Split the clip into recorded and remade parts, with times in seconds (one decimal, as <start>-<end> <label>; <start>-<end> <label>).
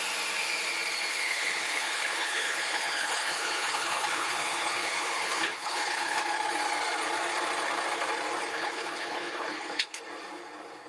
0.0-1.1 recorded; 1.1-6.2 remade; 6.2-8.5 recorded; 8.5-10.0 remade; 10.0-10.9 recorded